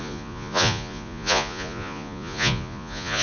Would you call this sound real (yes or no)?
no